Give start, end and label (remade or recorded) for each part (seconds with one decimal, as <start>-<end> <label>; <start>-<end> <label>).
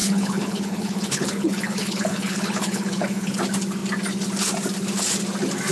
0.0-3.4 remade; 3.4-5.7 recorded